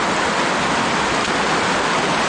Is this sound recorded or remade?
recorded